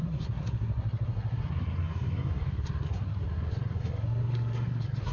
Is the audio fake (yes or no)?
yes